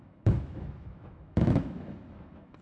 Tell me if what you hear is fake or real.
fake